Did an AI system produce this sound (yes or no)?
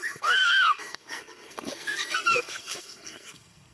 yes